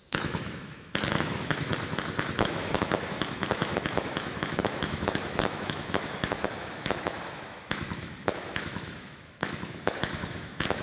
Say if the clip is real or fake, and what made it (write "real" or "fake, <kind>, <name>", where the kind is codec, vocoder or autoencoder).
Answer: fake, autoencoder, DAC-VAE